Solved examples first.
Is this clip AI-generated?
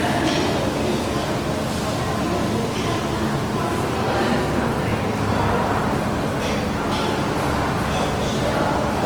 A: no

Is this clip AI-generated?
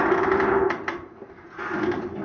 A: no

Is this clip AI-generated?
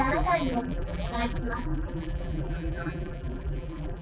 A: yes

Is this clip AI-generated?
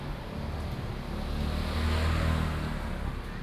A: no